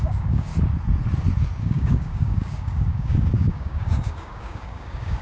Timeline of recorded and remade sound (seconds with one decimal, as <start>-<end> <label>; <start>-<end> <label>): 0.0-0.5 remade; 0.5-1.6 recorded; 1.6-5.2 remade